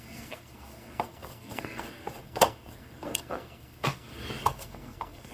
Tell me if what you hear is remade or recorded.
remade